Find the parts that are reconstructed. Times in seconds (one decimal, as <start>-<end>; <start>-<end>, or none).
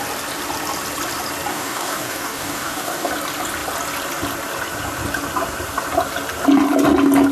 1.5-3.1